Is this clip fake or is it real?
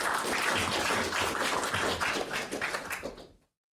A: real